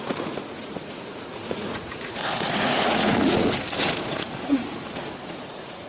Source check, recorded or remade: remade